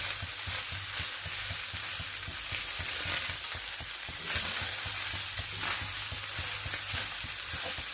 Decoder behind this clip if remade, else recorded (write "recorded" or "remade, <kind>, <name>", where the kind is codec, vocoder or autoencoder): recorded